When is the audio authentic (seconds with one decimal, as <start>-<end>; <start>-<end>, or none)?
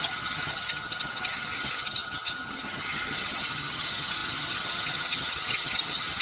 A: none